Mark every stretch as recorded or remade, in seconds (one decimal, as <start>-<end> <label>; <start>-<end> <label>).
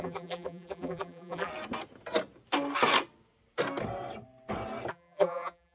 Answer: 0.0-1.5 remade; 1.5-4.9 recorded; 4.9-5.7 remade